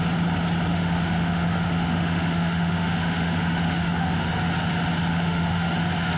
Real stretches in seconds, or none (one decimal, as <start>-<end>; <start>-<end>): 0.0-0.7; 4.4-5.1; 5.8-6.2